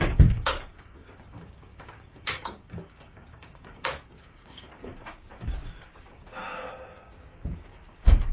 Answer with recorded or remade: remade